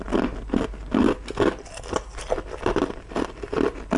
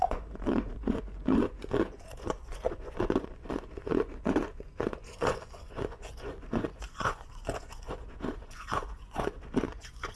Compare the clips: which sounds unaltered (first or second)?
first